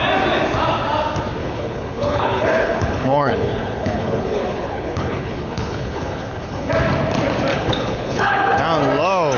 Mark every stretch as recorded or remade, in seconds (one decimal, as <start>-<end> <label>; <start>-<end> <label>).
0.0-1.4 recorded; 1.4-6.7 remade; 6.7-7.5 recorded; 7.5-8.6 remade; 8.6-9.4 recorded